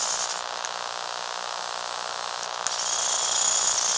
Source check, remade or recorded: recorded